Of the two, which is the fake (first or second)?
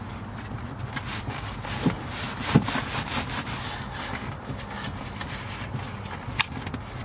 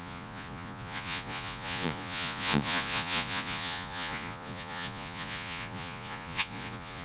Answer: second